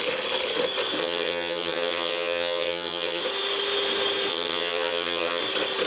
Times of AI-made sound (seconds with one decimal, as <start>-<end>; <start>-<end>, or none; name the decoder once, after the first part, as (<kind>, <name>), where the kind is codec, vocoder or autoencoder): 1.0-3.2 (vocoder, HiFi-GAN); 4.3-5.4